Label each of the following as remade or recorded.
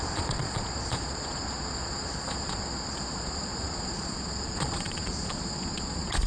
remade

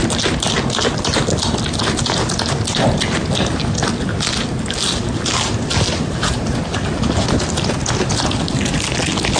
recorded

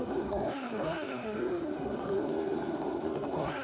remade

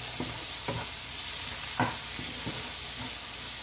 recorded